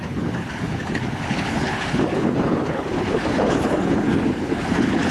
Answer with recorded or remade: remade